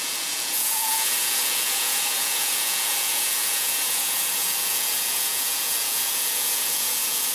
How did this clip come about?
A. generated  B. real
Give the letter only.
A